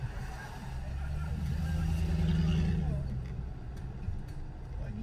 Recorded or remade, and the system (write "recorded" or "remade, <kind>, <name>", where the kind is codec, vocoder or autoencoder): recorded